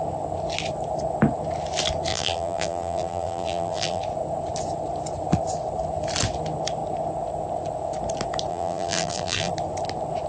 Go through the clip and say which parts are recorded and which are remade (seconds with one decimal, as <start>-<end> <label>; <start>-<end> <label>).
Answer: 0.0-2.1 recorded; 2.1-4.0 remade; 4.0-8.5 recorded; 8.5-9.5 remade; 9.5-10.3 recorded